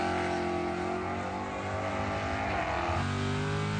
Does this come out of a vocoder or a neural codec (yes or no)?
no